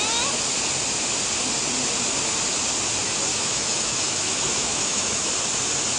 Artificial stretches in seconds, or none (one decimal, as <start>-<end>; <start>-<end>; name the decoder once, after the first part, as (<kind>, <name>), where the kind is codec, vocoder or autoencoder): 3.3-5.3 (autoencoder, DAC-VAE)